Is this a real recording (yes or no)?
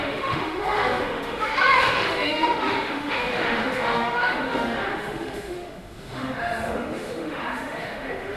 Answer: no